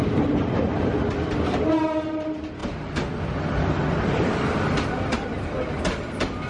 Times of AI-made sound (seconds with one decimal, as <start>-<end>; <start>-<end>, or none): 0.0-1.0